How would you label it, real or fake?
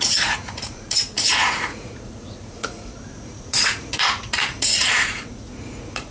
fake